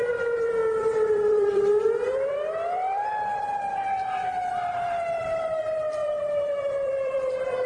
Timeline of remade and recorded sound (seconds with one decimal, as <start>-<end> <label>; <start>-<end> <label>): 0.0-7.7 remade